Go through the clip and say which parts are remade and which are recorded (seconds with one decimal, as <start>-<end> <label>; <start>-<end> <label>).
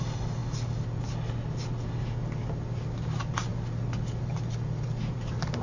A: 0.0-5.6 recorded